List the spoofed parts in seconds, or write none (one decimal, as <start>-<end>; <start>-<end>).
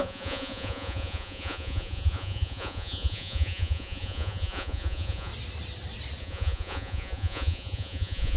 0.0-5.3; 6.2-8.4